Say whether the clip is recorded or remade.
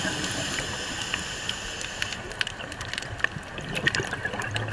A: recorded